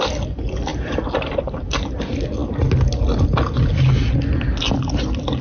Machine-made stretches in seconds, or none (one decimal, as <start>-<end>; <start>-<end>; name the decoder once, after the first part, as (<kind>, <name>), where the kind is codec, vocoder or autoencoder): 0.7-2.0 (vocoder, BigVGAN v2)